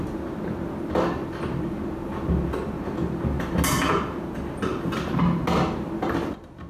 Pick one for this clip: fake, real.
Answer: real